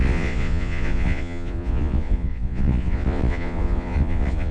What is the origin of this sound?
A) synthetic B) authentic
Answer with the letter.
A